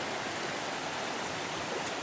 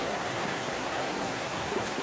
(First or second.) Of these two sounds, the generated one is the second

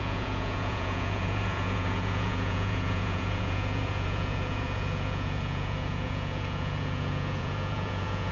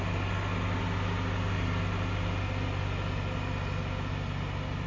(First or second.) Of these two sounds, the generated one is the first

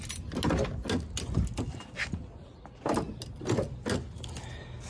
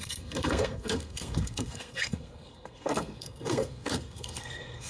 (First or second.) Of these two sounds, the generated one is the second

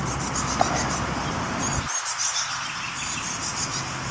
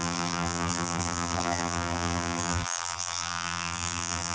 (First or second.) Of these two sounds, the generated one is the second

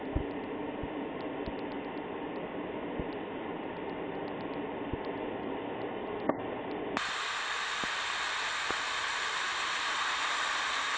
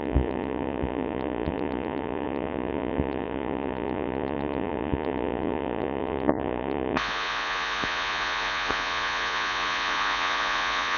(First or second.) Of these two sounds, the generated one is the second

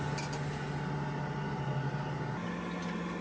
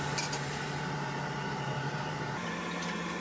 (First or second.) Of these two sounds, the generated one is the second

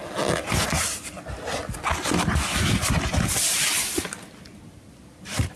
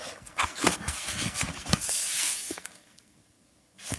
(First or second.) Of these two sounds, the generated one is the second